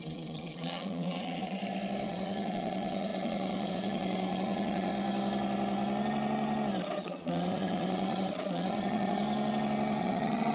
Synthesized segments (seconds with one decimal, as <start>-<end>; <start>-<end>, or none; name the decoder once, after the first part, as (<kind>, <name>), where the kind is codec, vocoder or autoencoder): 0.0-1.6 (vocoder, Vocos); 2.1-4.9; 7.0-9.2; 10.0-10.5